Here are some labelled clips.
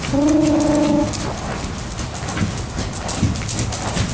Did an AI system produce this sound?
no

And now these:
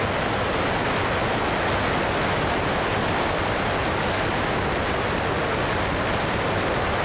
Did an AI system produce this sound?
no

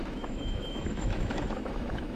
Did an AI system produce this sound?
yes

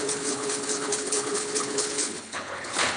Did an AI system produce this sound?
yes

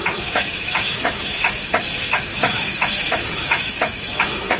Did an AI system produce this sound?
yes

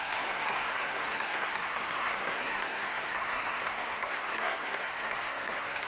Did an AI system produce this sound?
yes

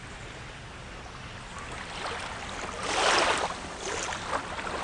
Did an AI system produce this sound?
no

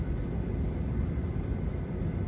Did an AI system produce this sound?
no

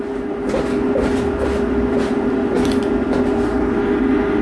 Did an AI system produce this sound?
no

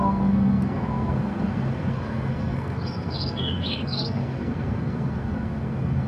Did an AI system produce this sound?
yes